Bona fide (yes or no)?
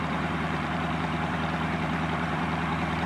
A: no